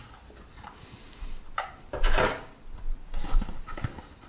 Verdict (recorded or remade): recorded